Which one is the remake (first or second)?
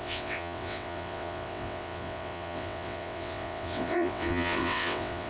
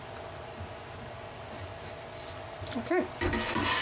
first